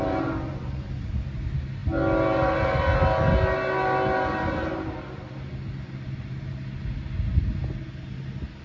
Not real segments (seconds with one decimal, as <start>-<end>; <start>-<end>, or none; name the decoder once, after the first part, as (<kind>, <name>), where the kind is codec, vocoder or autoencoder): none